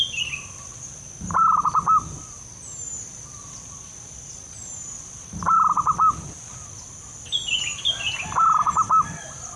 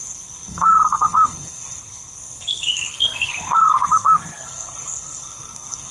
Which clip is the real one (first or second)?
first